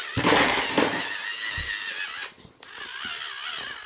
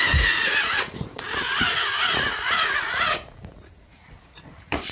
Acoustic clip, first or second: first